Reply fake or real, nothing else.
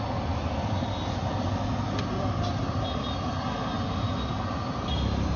real